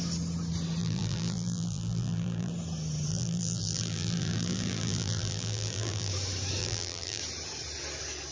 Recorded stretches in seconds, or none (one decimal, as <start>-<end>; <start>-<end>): 0.0-0.8; 2.5-3.1; 6.1-6.6; 7.2-8.3